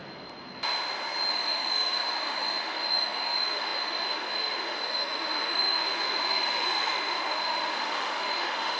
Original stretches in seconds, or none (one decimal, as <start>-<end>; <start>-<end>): 0.0-1.3